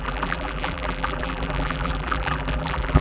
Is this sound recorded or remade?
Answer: remade